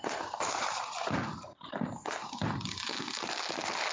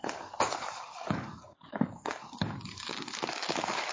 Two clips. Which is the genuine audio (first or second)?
first